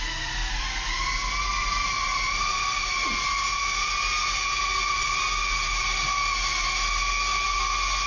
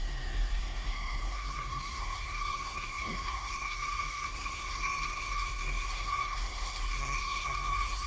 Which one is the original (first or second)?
first